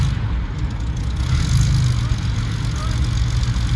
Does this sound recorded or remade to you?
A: recorded